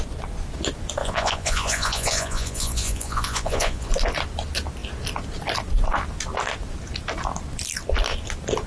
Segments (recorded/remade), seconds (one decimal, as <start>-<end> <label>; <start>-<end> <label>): 0.0-1.0 recorded; 1.0-3.9 remade; 3.9-8.7 recorded

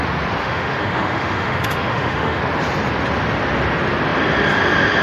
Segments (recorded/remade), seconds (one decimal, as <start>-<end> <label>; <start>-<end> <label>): 0.0-0.4 recorded; 0.4-2.4 remade; 2.4-5.0 recorded

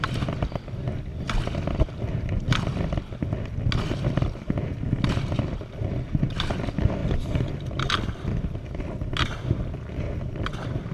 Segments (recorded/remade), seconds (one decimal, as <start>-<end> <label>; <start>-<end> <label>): 0.0-10.9 recorded

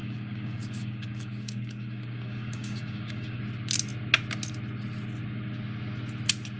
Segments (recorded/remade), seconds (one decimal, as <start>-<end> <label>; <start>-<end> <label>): 0.0-3.4 remade; 3.4-6.6 recorded

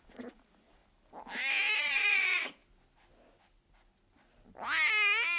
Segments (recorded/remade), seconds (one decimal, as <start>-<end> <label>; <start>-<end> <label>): 0.0-0.8 remade; 0.8-1.8 recorded; 1.8-2.6 remade; 2.6-5.4 recorded